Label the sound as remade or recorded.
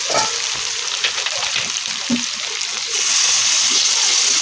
recorded